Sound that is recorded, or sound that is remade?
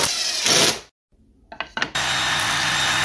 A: recorded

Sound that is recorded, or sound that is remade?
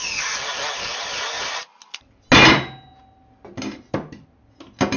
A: recorded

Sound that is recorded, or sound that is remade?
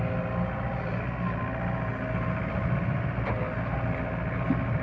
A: recorded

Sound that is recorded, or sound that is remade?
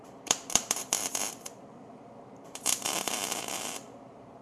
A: remade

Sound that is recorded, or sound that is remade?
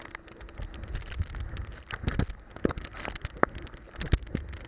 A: recorded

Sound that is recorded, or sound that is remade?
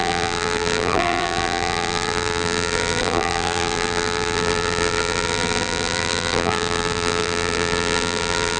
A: remade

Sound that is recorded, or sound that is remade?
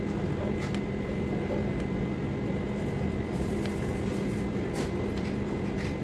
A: recorded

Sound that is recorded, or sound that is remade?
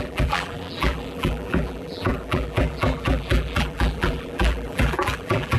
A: remade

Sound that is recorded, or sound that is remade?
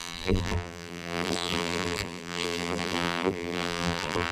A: remade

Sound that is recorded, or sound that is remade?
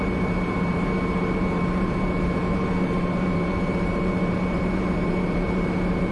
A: remade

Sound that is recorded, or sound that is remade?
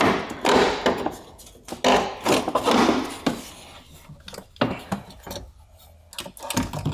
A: recorded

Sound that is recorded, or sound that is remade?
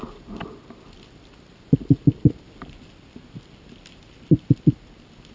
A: recorded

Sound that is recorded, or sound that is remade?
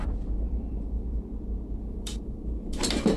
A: remade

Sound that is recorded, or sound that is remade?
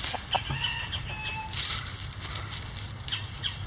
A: recorded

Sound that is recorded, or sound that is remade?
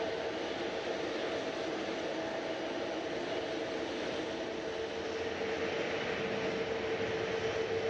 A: recorded